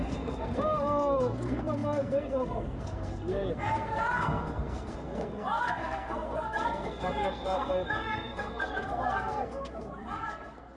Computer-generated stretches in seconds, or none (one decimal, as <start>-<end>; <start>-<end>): 0.0-10.8